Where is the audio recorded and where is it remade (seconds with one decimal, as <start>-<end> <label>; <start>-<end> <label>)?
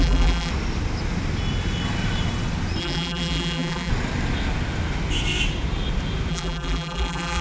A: 0.0-0.5 remade; 0.5-2.8 recorded; 2.8-3.9 remade; 3.9-6.3 recorded; 6.3-7.4 remade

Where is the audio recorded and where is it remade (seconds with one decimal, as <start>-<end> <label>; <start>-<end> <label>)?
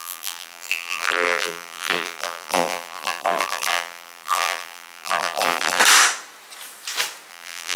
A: 0.0-5.8 remade; 5.8-7.3 recorded; 7.3-7.8 remade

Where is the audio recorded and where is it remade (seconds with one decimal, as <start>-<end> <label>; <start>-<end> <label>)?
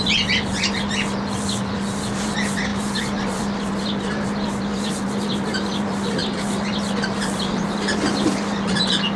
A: 0.0-9.2 recorded